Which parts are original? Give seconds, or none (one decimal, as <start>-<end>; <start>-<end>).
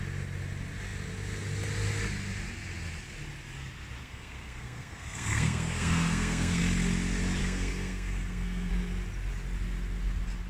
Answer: 0.0-4.0; 6.6-7.4; 8.7-10.5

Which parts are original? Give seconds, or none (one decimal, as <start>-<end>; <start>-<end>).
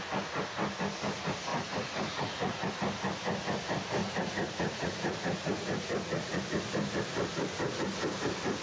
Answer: 0.0-1.5; 2.7-4.0; 6.4-8.6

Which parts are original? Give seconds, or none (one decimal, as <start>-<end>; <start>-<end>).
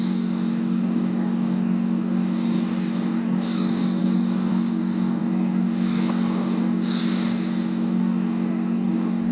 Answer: none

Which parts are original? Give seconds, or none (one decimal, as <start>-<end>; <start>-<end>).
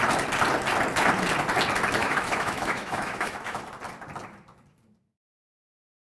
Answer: 0.0-2.0; 3.6-6.2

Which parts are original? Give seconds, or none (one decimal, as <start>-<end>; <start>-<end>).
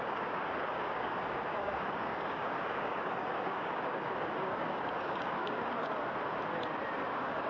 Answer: 5.9-7.1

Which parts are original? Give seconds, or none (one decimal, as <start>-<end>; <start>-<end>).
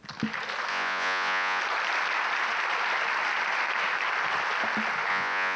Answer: 0.0-0.7; 1.6-5.1